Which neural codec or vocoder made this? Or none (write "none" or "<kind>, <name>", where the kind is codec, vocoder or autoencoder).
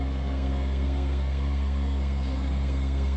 codec, SNAC